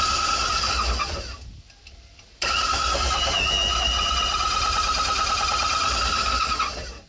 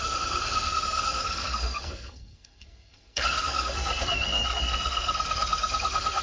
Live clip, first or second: first